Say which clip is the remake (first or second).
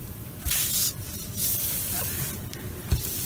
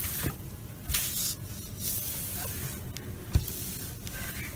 first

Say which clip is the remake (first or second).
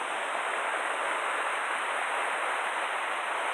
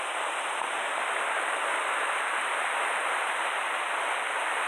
second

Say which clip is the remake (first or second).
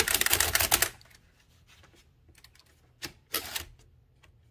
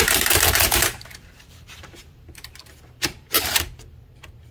second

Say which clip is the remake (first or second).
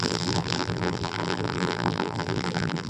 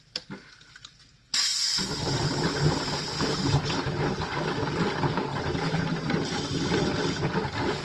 first